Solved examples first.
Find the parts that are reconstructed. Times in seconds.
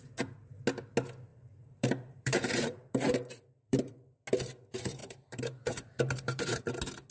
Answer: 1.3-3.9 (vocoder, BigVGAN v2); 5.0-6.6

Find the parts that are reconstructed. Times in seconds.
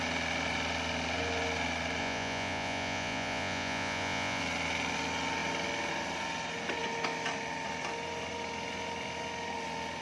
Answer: 2.0-4.4 (vocoder, Vocos)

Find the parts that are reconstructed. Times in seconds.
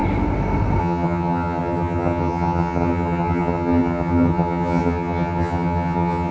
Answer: 0.8-6.3 (vocoder, HiFi-GAN)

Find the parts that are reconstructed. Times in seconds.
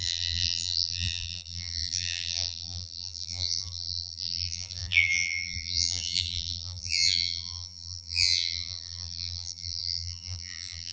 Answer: 0.0-10.9 (vocoder, BigVGAN v2)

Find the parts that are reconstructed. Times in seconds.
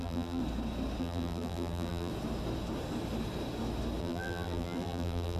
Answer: 0.0-0.4 (vocoder, BigVGAN v2); 1.0-2.1; 4.0-5.4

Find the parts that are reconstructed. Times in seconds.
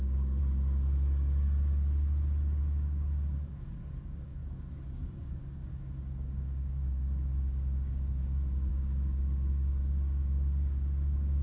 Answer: 0.0-0.4 (codec, DAC); 2.6-11.4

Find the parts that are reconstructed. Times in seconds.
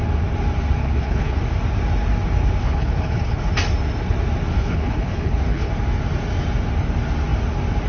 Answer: 0.8-1.4 (codec, HILCodec); 2.6-3.5; 4.5-5.7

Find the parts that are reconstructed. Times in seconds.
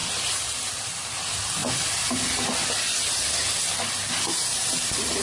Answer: none